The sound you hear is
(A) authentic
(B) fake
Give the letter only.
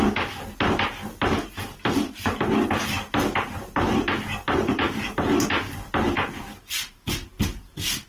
A